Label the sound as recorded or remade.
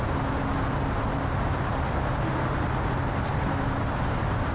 recorded